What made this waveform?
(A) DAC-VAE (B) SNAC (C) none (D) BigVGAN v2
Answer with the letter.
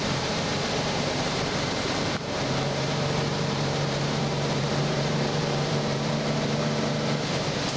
D